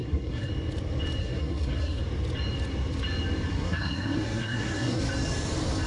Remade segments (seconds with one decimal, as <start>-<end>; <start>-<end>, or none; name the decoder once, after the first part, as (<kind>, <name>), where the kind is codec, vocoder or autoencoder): 0.0-0.5 (codec, SNAC); 1.2-2.0; 3.5-5.0